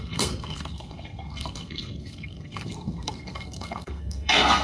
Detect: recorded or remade remade